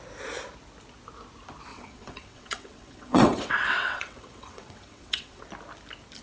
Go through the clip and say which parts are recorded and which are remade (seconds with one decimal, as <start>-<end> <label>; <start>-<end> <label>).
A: 0.0-1.7 recorded; 1.7-5.4 remade; 5.4-6.2 recorded